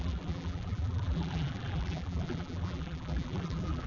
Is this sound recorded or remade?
remade